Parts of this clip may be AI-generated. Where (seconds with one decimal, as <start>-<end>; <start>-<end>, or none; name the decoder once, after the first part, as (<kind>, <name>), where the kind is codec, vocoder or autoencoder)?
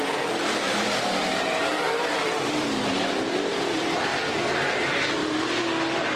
0.0-4.1 (vocoder, BigVGAN v2); 4.7-6.2